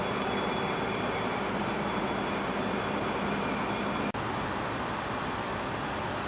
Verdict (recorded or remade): recorded